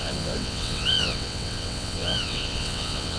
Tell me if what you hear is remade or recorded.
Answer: remade